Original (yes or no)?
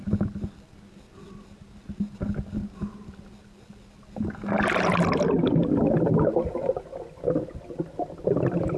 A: yes